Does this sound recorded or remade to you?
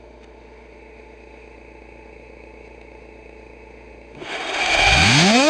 remade